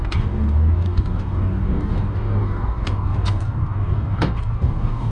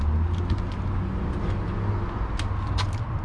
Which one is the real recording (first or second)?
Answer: second